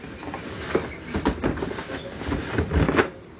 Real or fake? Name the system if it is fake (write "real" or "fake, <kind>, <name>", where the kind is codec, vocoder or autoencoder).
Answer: real